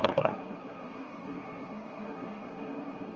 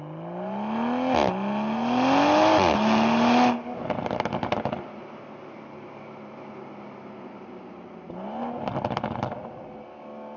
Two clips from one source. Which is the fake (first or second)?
first